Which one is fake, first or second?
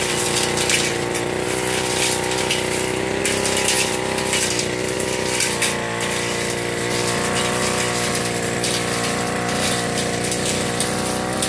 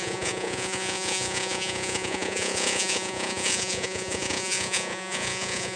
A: second